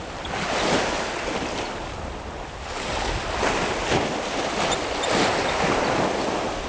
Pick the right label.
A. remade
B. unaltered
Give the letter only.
B